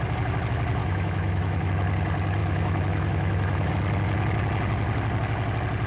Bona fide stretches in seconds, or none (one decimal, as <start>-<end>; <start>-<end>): 0.0-0.8; 1.7-2.4; 3.7-5.9